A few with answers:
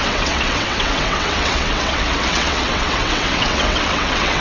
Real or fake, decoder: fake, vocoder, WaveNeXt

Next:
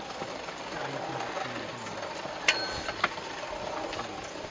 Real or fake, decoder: real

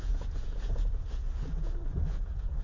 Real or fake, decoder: fake, vocoder, Vocos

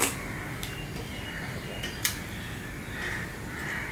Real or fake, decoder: real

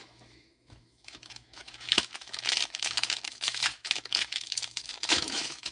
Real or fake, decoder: fake, autoencoder, DAC-VAE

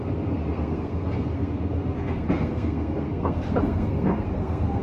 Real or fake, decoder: fake, codec, SNAC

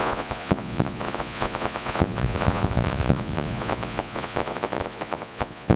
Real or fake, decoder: fake, vocoder, Vocos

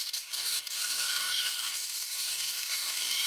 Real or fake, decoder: fake, codec, DAC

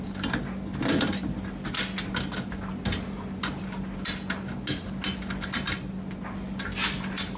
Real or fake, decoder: real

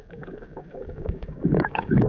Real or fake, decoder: fake, codec, DAC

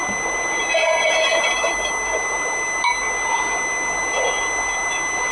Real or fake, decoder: real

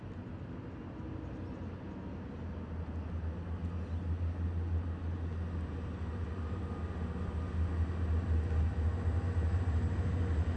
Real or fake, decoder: real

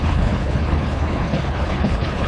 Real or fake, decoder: fake, codec, HILCodec